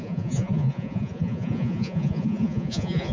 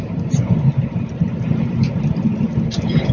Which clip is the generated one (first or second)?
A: first